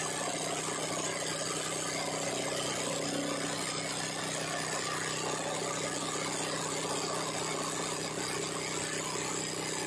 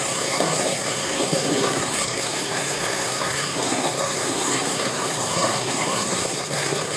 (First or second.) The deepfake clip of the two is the second